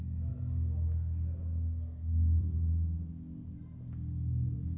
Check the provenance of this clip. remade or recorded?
recorded